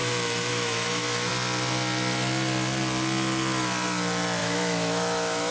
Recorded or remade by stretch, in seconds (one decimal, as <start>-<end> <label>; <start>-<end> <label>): 0.0-1.3 remade; 1.3-4.4 recorded; 4.4-5.5 remade